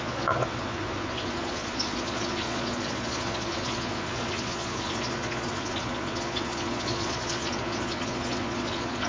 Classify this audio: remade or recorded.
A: remade